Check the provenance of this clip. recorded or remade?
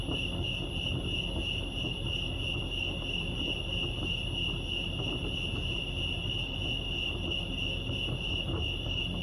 recorded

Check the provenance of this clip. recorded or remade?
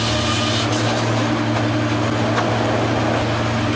recorded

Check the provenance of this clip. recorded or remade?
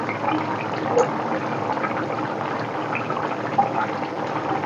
recorded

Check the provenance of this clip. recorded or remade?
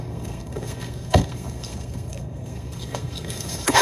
remade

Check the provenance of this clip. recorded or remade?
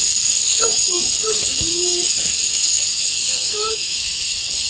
remade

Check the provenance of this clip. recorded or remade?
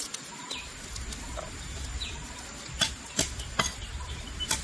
recorded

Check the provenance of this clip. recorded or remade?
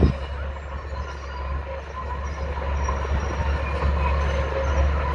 recorded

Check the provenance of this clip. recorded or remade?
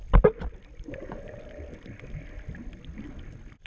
recorded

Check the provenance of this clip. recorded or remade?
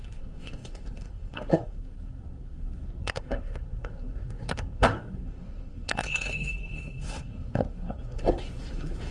remade